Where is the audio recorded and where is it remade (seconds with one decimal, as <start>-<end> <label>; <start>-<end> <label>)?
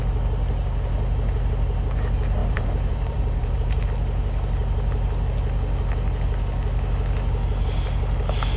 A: 0.0-2.4 recorded; 2.4-3.8 remade; 3.8-8.6 recorded